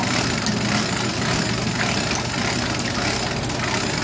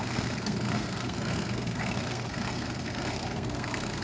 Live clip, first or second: first